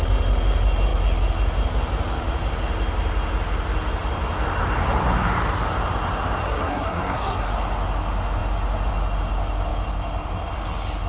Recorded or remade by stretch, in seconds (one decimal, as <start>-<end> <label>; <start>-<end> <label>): 0.0-6.4 recorded; 6.4-7.5 remade; 7.5-11.1 recorded

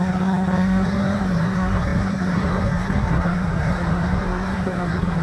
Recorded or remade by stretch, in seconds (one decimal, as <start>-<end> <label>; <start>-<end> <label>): 0.0-5.2 remade

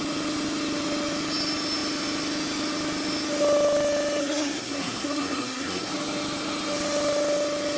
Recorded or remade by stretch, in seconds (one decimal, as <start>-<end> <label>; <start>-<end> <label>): 0.0-4.2 recorded; 4.2-5.9 remade; 5.9-7.8 recorded